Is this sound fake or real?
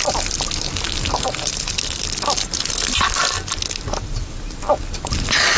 real